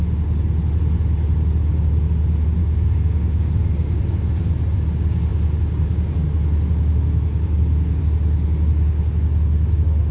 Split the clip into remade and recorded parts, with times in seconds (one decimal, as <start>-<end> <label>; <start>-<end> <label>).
0.0-2.6 recorded; 2.6-4.0 remade; 4.0-10.1 recorded

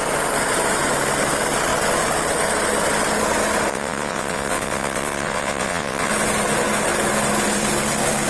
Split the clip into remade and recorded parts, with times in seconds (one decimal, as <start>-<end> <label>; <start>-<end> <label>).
0.0-3.7 recorded; 3.7-6.1 remade; 6.1-8.3 recorded

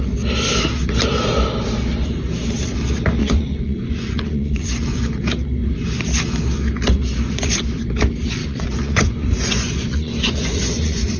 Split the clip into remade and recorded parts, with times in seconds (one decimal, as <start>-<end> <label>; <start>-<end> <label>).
0.0-3.2 recorded; 3.2-5.0 remade; 5.0-8.4 recorded; 8.4-11.2 remade